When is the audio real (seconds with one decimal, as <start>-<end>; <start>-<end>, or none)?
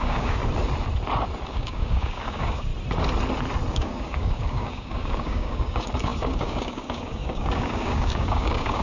0.4-1.5; 2.7-3.7